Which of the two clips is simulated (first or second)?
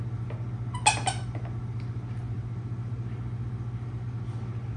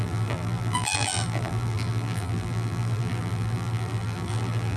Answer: second